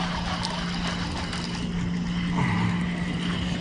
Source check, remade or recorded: recorded